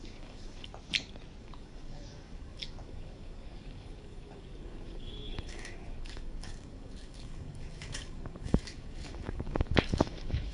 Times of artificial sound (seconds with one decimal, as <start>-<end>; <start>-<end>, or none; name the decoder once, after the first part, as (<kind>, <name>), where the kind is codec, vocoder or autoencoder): 0.0-0.7 (codec, DAC); 1.4-10.5